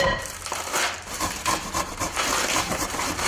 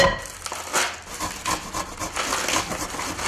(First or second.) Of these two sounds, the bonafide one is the second